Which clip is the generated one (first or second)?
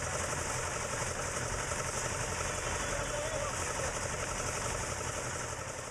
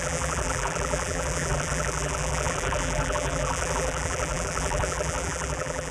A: second